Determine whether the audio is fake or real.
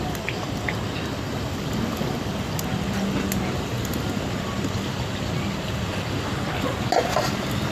real